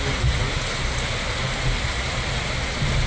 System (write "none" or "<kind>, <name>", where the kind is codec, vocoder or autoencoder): none